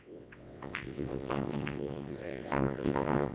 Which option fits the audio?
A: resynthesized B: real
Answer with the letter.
A